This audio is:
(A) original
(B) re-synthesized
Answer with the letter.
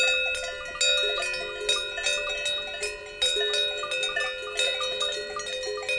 A